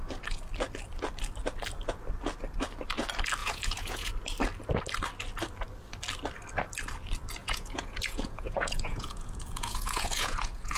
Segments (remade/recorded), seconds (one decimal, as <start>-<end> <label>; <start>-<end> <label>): 0.0-3.4 recorded; 3.4-4.1 remade; 4.1-7.4 recorded; 7.4-10.8 remade